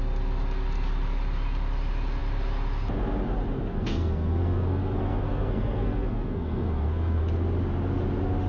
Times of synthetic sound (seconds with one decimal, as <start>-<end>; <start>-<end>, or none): 3.7-7.2

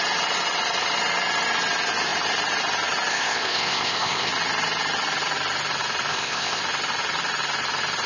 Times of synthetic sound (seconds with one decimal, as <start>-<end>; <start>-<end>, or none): 3.1-4.3; 6.1-6.6

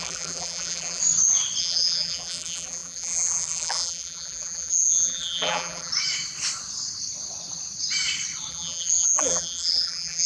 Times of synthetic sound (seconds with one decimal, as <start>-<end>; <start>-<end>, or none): 0.0-1.0; 1.6-5.9; 8.5-10.3

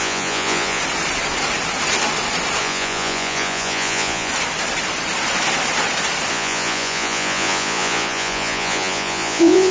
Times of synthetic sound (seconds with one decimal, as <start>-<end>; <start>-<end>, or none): 0.0-0.8; 2.6-4.3; 6.3-9.7

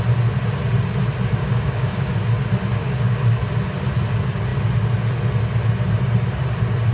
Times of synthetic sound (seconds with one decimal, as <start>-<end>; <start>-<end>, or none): 1.4-2.2; 2.7-3.3

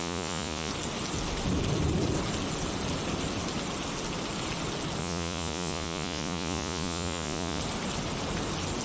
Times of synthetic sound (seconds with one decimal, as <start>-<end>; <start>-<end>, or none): 0.0-0.7; 5.0-7.6